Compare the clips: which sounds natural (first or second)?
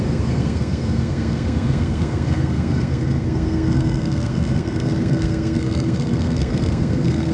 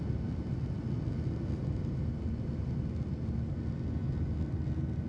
second